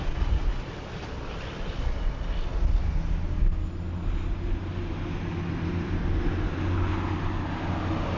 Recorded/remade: recorded